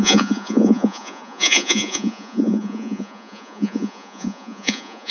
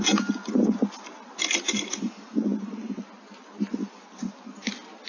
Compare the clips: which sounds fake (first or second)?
first